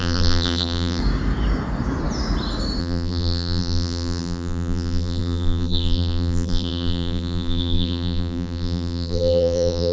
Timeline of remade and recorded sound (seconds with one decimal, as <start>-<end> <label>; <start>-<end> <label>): 0.0-1.0 remade; 1.0-2.8 recorded; 2.8-9.9 remade